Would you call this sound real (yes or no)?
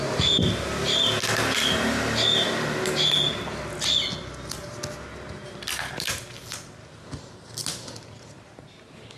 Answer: yes